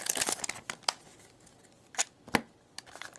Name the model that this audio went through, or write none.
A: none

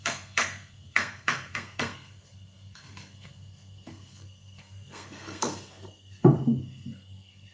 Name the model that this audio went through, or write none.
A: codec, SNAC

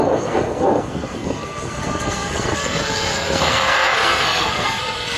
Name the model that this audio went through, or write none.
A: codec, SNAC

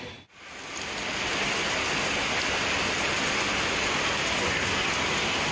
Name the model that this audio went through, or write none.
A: none